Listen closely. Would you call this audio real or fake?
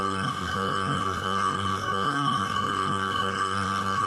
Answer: fake